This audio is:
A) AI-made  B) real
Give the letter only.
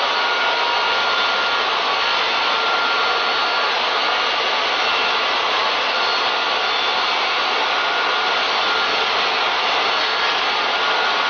B